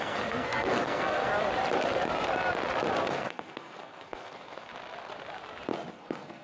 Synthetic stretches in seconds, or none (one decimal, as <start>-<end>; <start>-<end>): 0.0-1.3; 3.1-4.7; 5.9-6.4